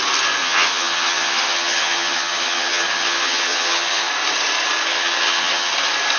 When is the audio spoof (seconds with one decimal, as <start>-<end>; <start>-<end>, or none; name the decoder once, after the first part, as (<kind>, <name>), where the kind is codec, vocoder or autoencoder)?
0.4-4.1 (vocoder, HiFi-GAN); 4.9-5.7